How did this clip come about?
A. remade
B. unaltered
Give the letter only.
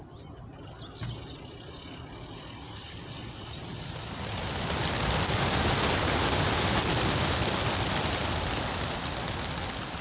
B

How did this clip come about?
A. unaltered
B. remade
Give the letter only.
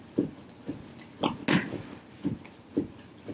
A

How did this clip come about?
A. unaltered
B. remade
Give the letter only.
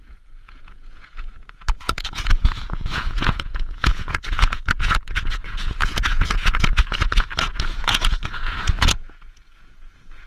B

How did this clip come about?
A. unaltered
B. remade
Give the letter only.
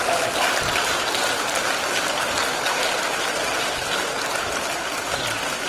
A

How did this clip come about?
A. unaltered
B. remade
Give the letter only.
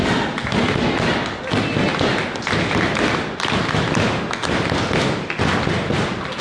A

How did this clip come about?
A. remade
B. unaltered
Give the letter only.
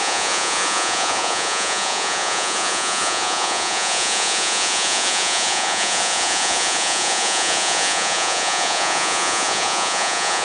A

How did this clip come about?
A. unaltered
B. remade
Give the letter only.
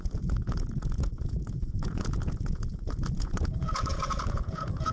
B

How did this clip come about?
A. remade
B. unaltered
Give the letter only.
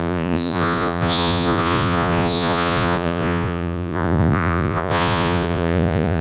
A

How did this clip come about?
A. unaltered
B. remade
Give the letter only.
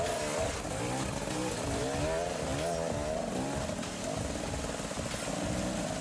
A